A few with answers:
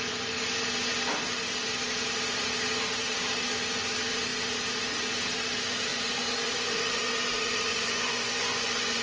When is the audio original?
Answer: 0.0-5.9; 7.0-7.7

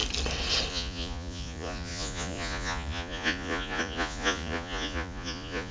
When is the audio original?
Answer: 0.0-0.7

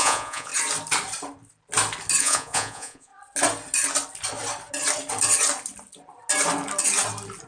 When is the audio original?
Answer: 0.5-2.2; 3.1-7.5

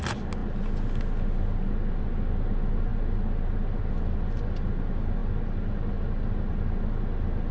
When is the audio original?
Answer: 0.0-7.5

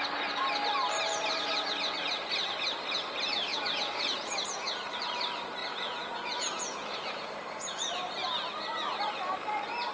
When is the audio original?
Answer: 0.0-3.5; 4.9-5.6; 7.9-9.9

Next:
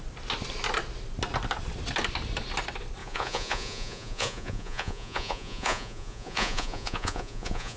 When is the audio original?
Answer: 0.0-3.0

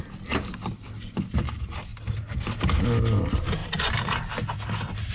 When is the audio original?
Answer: 0.0-5.1

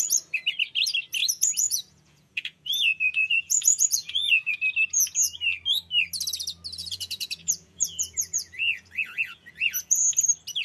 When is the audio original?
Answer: 0.0-1.2; 4.5-6.8; 10.0-10.6